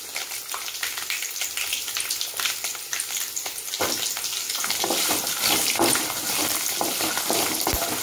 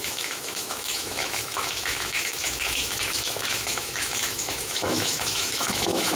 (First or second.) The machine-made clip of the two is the second